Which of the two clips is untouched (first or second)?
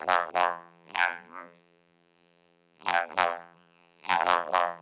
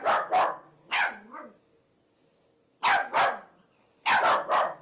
second